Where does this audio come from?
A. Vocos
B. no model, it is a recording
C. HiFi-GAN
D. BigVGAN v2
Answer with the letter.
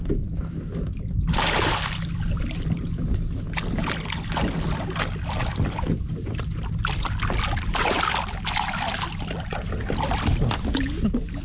B